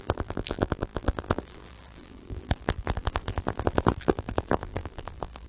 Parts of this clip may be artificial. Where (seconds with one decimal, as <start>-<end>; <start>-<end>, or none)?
0.0-5.5